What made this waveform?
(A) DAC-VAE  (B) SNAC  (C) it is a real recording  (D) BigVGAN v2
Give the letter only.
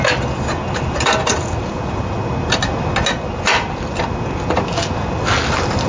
C